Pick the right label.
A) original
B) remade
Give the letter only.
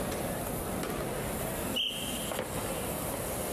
A